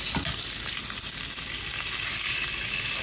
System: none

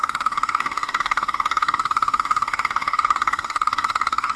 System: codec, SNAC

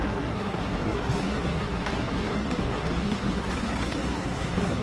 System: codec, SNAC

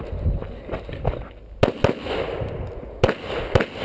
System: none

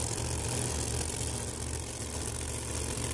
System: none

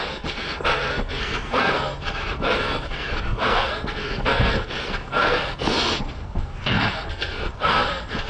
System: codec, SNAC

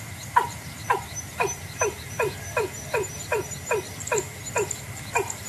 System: none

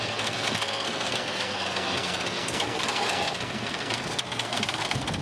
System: codec, SNAC